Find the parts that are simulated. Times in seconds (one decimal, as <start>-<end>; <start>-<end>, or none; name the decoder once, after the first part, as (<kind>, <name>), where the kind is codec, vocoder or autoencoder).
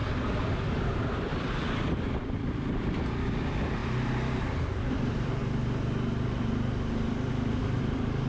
0.0-5.4 (vocoder, BigVGAN v2); 7.3-8.3